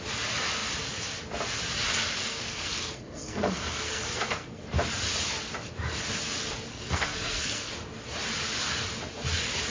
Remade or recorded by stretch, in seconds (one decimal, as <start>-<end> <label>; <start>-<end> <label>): 0.0-2.2 recorded; 2.2-4.6 remade; 4.6-6.7 recorded; 6.7-7.7 remade; 7.7-9.7 recorded